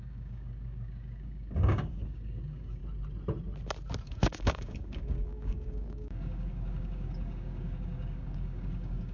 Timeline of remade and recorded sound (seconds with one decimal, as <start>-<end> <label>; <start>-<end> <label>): 0.0-2.8 remade; 2.8-4.0 recorded; 4.0-9.1 remade